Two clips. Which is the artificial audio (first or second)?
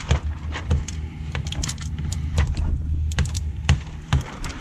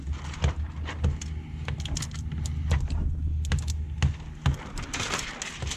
first